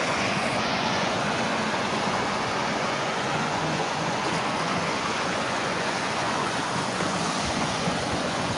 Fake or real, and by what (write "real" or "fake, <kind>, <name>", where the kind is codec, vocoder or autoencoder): fake, vocoder, Vocos